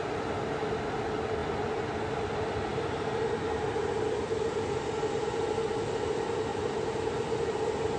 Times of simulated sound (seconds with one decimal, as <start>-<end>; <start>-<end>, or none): 1.4-2.3; 2.7-5.4; 6.5-8.0